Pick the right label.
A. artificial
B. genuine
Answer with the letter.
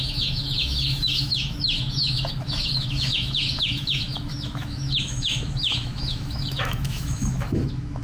A